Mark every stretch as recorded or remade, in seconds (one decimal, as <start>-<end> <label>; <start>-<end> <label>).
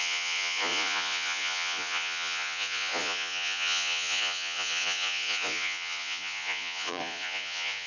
0.0-7.9 remade